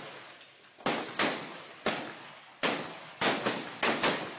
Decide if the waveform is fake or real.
real